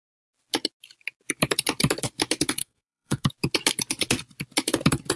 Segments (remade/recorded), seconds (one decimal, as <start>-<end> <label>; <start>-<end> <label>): 0.0-2.6 recorded; 2.6-3.3 remade; 3.3-5.2 recorded